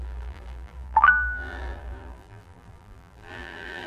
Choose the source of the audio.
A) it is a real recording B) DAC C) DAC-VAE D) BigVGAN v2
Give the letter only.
D